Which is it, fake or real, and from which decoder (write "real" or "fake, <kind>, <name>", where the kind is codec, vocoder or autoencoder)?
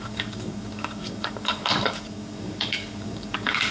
fake, codec, DAC